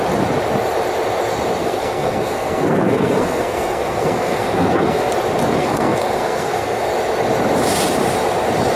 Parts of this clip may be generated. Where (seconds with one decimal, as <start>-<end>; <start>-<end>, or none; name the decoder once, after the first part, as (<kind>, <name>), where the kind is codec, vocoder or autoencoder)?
1.6-5.1 (codec, SNAC); 5.6-6.9